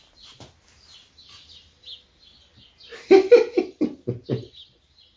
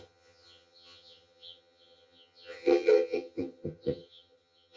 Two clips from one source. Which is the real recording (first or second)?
first